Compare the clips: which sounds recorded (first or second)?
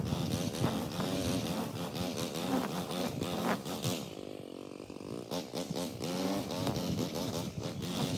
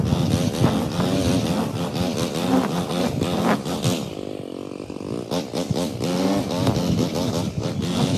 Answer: second